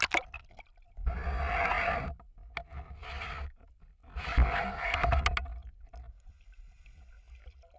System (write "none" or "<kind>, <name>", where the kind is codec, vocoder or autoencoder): none